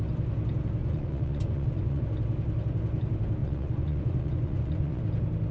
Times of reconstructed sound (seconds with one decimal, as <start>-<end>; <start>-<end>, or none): 0.8-2.0; 3.4-5.0